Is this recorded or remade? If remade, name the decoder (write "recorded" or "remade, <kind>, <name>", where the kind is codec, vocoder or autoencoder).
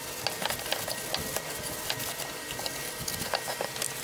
recorded